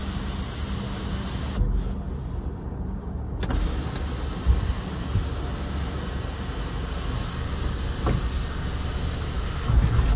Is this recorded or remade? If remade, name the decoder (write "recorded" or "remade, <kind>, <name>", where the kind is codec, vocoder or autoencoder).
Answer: recorded